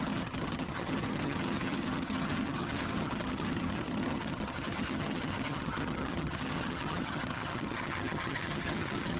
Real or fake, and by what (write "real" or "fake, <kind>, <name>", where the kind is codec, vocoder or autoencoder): fake, vocoder, HiFi-GAN